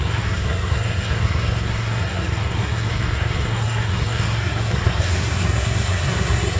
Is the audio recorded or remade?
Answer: remade